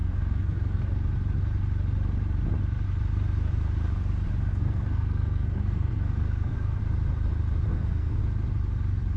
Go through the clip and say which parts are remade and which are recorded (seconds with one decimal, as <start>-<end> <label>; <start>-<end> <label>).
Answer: 0.0-0.8 remade; 0.8-4.5 recorded; 4.5-6.8 remade; 6.8-7.7 recorded; 7.7-8.2 remade; 8.2-9.2 recorded